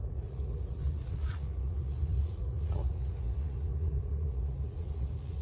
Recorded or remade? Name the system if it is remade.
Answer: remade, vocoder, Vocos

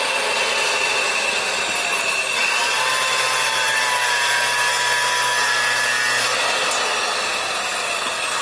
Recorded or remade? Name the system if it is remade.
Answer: recorded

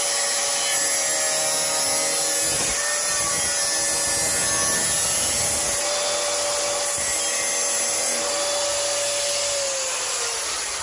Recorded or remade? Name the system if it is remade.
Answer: recorded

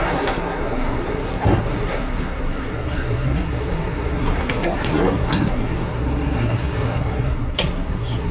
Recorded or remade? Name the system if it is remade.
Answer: remade, codec, SNAC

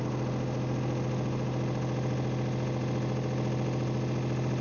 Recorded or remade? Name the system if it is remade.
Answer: recorded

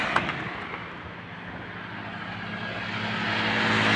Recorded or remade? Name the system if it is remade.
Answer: recorded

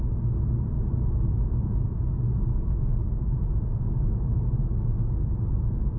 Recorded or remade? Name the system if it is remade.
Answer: recorded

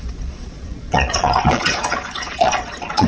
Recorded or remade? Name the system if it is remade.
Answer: remade, vocoder, Vocos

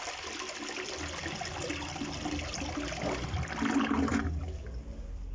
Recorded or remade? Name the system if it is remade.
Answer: recorded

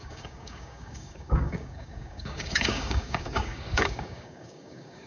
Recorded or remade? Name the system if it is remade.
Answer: remade, codec, DAC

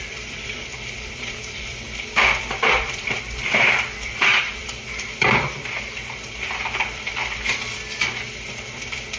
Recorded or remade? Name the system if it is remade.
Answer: remade, vocoder, BigVGAN v2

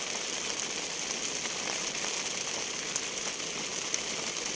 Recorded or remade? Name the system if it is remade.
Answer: recorded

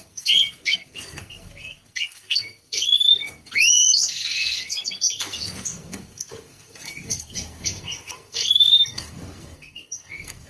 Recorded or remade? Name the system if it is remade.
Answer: remade, codec, SNAC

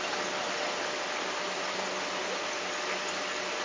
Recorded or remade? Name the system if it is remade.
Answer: recorded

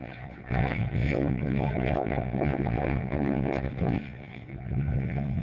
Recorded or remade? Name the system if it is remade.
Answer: remade, vocoder, WaveNeXt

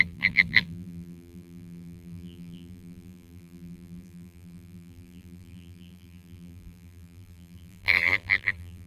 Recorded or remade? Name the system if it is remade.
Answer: remade, vocoder, BigVGAN v2